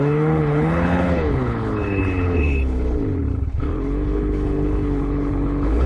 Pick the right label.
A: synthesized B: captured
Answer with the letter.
A